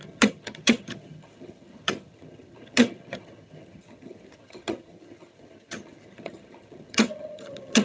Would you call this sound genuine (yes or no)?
no